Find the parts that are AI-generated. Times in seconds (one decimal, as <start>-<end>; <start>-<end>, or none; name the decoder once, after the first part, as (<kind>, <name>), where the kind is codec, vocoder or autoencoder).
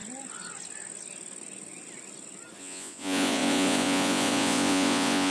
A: 2.6-5.3 (vocoder, Vocos)